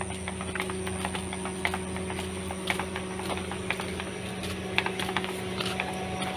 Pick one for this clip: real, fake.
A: real